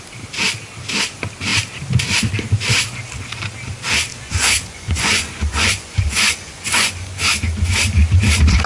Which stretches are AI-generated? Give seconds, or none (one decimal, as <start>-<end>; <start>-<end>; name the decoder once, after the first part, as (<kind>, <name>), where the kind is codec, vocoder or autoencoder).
4.1-7.2 (vocoder, Vocos)